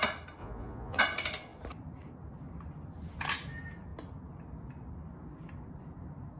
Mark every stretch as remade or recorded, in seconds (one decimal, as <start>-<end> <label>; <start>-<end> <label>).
0.0-0.4 recorded; 0.4-1.0 remade; 1.0-6.4 recorded

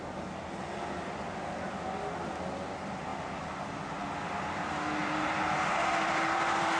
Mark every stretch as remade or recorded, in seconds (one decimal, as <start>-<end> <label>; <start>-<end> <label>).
0.0-5.0 recorded; 5.0-6.8 remade

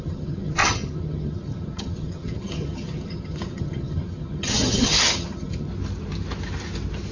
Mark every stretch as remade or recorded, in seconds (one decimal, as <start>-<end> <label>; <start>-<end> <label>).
0.0-5.7 remade; 5.7-7.1 recorded

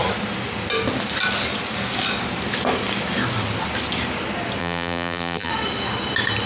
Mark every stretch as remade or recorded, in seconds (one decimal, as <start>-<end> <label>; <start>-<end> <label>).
0.0-4.6 recorded; 4.6-5.5 remade; 5.5-6.5 recorded

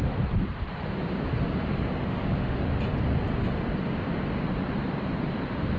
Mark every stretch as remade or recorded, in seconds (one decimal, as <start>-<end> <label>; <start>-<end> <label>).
0.0-2.0 recorded; 2.0-2.7 remade; 2.7-5.8 recorded

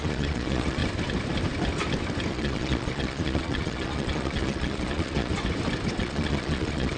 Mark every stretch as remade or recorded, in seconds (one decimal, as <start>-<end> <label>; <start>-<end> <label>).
0.0-0.8 remade; 0.8-2.3 recorded; 2.3-5.3 remade; 5.3-6.0 recorded; 6.0-7.0 remade